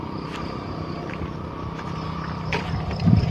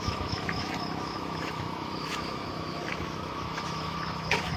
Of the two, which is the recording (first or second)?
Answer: first